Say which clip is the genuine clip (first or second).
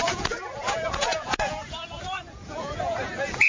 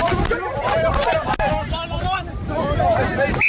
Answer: second